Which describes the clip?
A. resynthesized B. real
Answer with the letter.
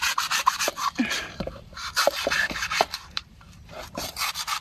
A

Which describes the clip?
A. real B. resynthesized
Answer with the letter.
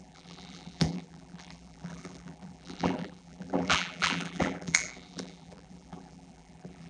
B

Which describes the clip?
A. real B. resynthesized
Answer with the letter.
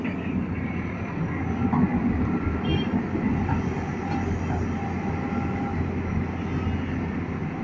A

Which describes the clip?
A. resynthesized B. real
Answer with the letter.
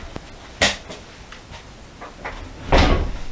B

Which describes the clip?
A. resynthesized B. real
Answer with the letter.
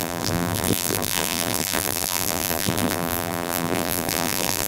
A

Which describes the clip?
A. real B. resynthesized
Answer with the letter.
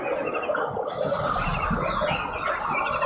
A